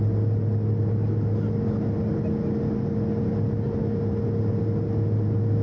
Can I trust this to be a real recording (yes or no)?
yes